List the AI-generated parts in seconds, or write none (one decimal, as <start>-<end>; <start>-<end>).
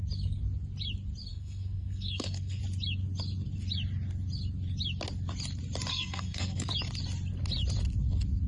1.3-2.6; 5.9-6.7